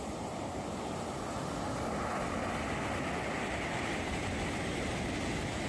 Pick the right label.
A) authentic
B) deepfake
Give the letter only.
A